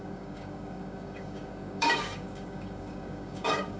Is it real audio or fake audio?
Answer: fake